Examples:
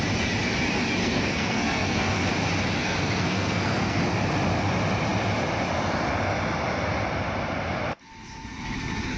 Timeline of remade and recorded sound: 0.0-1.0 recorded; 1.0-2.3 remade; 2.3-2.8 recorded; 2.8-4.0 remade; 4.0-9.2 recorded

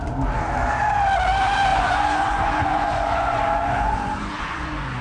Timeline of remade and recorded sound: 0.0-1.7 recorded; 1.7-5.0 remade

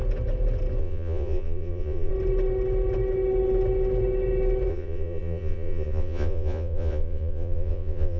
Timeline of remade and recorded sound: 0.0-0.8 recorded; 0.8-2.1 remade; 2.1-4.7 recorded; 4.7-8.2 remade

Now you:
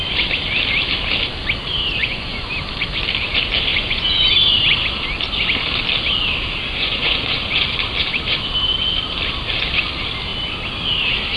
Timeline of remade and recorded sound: 0.0-2.0 recorded; 2.0-2.5 remade; 2.5-3.7 recorded; 3.7-4.3 remade; 4.3-6.7 recorded; 6.7-7.5 remade; 7.5-11.4 recorded

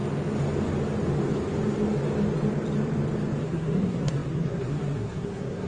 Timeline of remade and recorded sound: 0.0-3.4 recorded; 3.4-5.7 remade

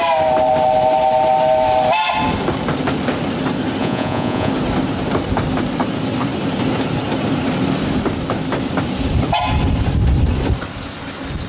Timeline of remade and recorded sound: 0.0-3.8 recorded; 3.8-4.5 remade; 4.5-11.5 recorded

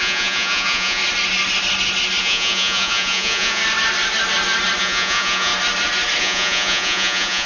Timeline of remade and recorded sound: 0.0-1.0 remade; 1.0-2.2 recorded; 2.2-3.6 remade; 3.6-4.8 recorded; 4.8-5.5 remade; 5.5-6.2 recorded; 6.2-7.5 remade